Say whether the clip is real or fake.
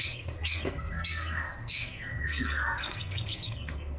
fake